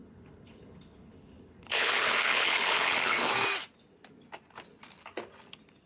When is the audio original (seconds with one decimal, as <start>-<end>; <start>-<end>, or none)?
3.3-5.9